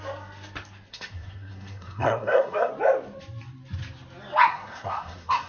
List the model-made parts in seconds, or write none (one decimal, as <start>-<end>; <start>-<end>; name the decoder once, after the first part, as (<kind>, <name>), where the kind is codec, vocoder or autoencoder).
0.9-2.7 (codec, SNAC); 4.5-5.5